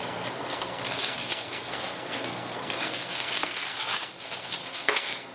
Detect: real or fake fake